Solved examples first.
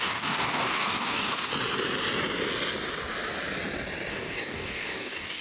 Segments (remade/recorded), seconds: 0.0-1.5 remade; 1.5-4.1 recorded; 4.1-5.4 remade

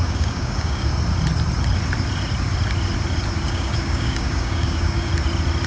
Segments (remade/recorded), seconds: 0.0-0.9 remade; 0.9-3.5 recorded; 3.5-5.1 remade; 5.1-5.7 recorded